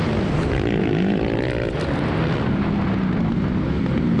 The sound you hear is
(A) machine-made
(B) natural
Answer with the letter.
B